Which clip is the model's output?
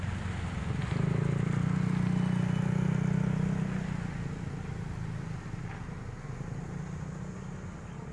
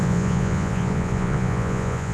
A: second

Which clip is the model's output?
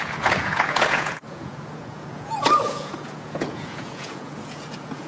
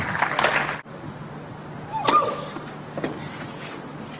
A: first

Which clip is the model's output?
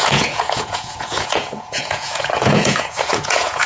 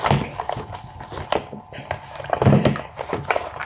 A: first